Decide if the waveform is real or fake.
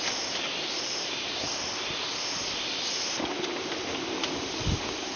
real